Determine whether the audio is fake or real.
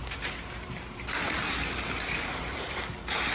fake